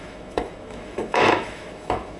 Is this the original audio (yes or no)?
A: no